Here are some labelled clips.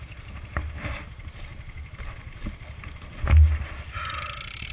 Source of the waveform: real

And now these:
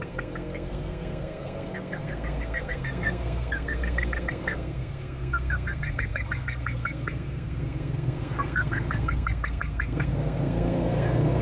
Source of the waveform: fake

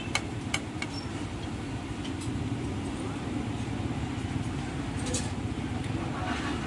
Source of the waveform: real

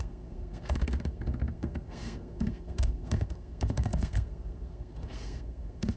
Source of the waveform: fake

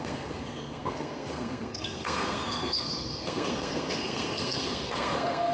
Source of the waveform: fake